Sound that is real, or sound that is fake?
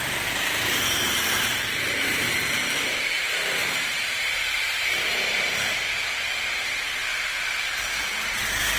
fake